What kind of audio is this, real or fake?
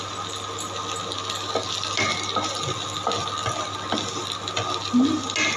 real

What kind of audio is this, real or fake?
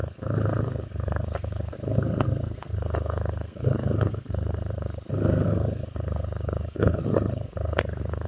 fake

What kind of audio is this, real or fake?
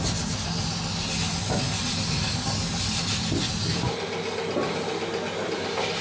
real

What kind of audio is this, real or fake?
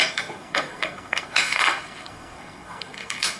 fake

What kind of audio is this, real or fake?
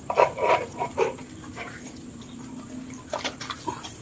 real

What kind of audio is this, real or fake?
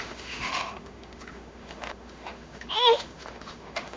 fake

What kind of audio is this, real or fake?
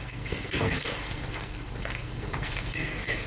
fake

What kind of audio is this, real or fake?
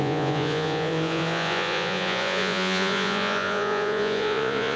fake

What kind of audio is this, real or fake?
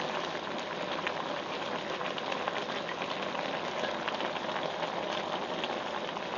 real